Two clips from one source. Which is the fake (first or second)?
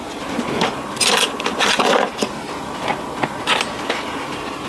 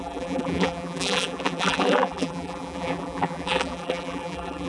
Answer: second